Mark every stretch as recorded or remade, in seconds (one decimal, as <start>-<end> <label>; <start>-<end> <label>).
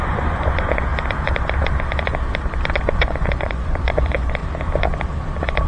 0.0-0.9 remade; 0.9-2.8 recorded; 2.8-4.4 remade; 4.4-5.7 recorded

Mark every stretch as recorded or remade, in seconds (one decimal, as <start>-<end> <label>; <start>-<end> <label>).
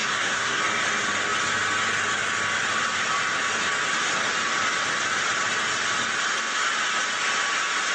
0.0-0.6 remade; 0.6-7.9 recorded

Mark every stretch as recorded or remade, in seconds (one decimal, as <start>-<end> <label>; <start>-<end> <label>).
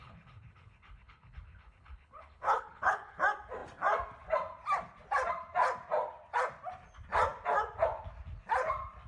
0.0-3.2 remade; 3.2-9.1 recorded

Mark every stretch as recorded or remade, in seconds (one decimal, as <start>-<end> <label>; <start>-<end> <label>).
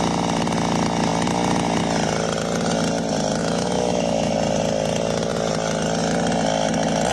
0.0-3.4 recorded; 3.4-4.3 remade; 4.3-7.1 recorded